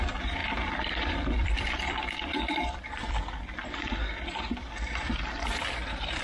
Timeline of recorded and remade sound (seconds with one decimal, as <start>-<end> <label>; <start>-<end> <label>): 0.0-6.2 remade